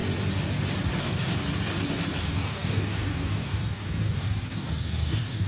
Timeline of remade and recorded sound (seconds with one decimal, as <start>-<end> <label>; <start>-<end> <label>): 0.0-1.0 recorded; 1.0-1.4 remade; 1.4-2.2 recorded; 2.2-5.5 remade